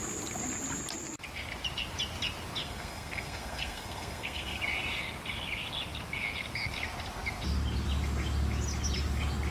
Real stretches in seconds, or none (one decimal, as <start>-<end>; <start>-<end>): 0.0-2.6; 4.6-9.5